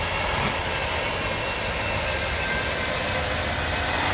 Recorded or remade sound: recorded